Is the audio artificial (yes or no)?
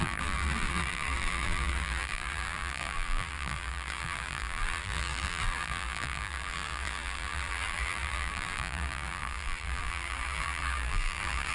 yes